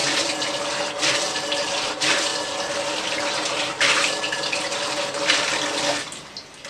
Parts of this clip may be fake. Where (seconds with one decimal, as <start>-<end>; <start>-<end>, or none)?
1.1-2.3; 3.1-3.7